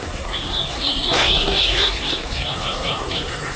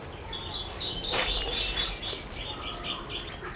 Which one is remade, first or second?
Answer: first